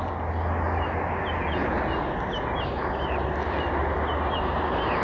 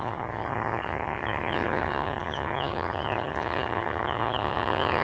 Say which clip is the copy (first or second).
second